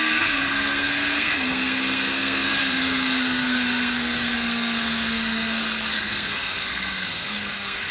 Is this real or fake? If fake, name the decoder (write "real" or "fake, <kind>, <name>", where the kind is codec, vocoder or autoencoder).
fake, codec, SNAC